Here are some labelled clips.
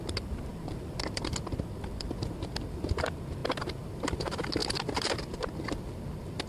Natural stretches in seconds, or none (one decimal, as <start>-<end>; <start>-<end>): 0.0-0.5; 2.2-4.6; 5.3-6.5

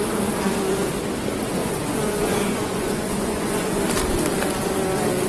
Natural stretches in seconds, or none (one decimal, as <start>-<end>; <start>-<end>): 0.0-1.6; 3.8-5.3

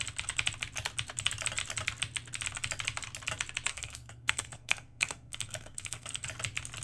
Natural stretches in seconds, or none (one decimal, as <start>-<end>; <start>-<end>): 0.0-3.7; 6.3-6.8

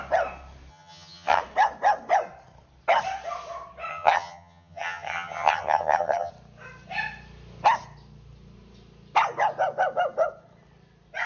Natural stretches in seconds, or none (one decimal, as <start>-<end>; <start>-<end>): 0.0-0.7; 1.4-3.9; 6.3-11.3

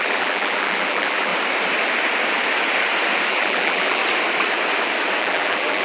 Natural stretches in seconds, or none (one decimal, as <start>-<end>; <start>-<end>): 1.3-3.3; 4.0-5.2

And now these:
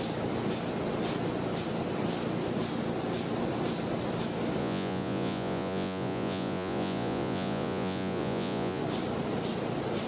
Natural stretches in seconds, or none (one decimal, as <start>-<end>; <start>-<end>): 0.0-4.6; 8.8-10.1